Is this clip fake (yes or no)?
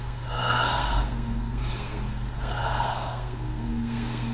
yes